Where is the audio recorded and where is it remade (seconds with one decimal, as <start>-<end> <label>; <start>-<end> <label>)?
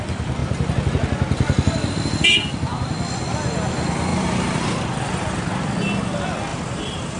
0.0-4.1 recorded; 4.1-5.7 remade; 5.7-6.5 recorded; 6.5-7.2 remade